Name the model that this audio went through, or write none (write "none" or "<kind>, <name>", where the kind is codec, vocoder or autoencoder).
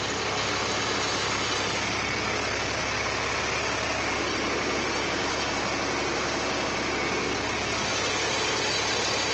none